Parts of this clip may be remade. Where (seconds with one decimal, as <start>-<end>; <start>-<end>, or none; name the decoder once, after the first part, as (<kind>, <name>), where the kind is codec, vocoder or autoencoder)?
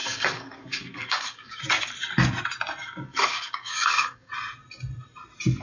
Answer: 0.0-1.6 (codec, DAC); 3.1-4.3